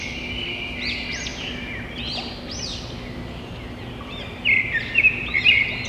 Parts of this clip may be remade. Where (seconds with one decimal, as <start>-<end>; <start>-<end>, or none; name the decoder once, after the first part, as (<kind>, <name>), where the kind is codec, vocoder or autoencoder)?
none

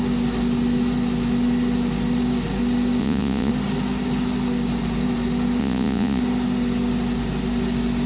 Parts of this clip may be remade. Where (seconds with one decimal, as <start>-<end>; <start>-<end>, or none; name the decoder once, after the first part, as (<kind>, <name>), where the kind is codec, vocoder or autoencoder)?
3.0-3.5 (vocoder, Vocos); 5.6-6.2

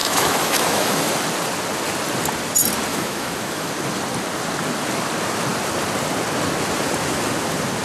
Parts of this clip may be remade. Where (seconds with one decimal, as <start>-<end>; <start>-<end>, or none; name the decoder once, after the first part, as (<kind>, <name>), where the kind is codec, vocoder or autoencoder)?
0.0-1.1 (autoencoder, DAC-VAE); 2.9-3.7

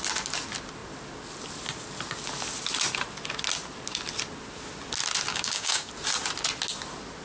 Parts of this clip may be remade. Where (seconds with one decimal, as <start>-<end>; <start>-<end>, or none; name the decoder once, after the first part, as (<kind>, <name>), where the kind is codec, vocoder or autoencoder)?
5.3-5.9 (codec, DAC)

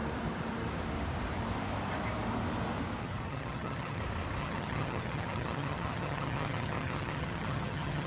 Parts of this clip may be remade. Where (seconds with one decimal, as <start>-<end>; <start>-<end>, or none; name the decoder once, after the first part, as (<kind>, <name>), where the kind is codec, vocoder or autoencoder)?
3.0-4.0 (vocoder, HiFi-GAN); 4.4-8.1

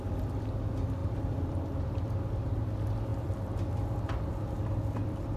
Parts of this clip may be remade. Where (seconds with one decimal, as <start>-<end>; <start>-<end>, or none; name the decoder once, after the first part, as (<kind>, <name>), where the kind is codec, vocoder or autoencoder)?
1.0-2.6 (vocoder, BigVGAN v2); 3.1-4.9